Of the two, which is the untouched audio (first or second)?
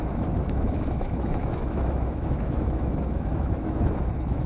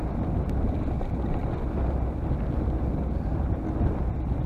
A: second